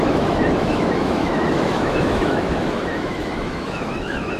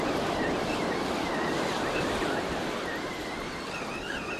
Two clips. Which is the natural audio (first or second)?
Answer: second